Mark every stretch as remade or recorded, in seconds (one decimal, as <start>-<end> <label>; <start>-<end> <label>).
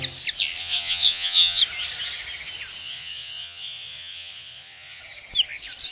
0.0-0.6 recorded; 0.6-1.6 remade; 1.6-2.8 recorded; 2.8-5.0 remade; 5.0-5.9 recorded